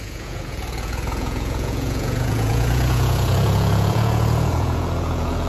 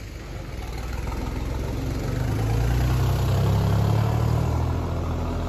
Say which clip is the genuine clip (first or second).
second